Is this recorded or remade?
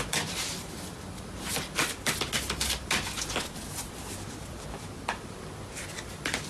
recorded